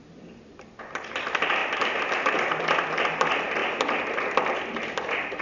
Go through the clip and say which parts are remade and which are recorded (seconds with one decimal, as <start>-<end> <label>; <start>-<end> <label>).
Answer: 0.0-5.4 recorded